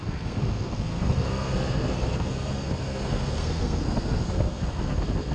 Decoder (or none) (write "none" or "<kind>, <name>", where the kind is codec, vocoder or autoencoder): codec, SNAC